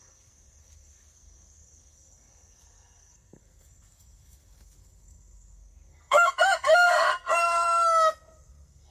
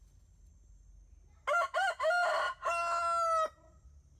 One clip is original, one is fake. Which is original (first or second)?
second